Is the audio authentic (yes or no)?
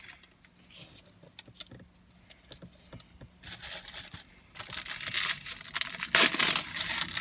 yes